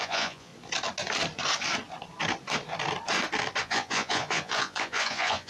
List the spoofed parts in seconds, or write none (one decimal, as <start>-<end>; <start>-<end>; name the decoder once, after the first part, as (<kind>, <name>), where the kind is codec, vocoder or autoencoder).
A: 0.0-0.5 (vocoder, Vocos); 3.6-5.5